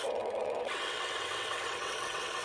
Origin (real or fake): fake